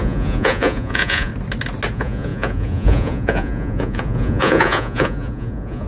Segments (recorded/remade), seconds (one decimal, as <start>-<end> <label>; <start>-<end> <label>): 0.0-1.3 remade; 1.3-1.9 recorded; 1.9-5.9 remade